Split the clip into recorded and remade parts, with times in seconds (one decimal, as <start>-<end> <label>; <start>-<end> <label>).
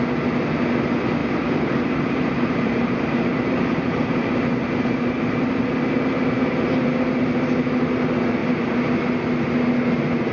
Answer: 0.0-1.2 recorded; 1.2-4.2 remade; 4.2-10.3 recorded